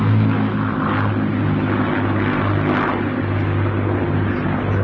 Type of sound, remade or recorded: recorded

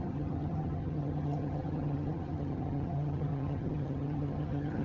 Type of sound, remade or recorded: remade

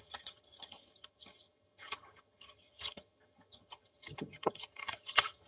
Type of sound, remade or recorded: remade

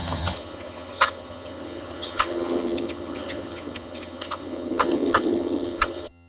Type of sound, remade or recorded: remade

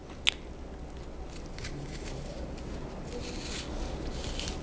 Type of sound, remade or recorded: recorded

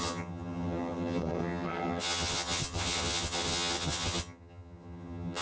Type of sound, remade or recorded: remade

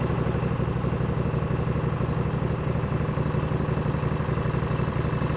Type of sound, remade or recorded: recorded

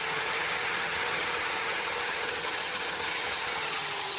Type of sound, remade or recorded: remade